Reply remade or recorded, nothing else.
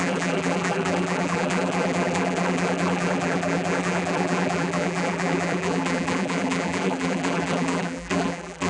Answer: remade